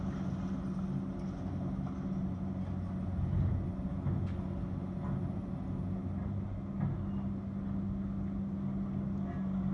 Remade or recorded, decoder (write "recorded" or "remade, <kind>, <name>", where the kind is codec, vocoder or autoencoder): recorded